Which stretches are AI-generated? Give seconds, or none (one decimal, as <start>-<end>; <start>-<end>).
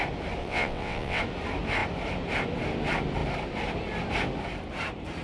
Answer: 0.4-1.2